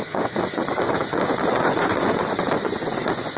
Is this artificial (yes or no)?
yes